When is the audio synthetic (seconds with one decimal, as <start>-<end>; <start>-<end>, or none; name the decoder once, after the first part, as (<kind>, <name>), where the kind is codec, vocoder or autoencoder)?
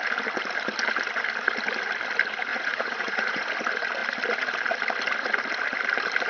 2.5-3.5 (vocoder, Vocos)